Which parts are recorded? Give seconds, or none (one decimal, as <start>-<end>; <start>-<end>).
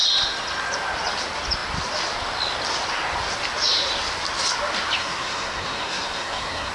0.0-5.0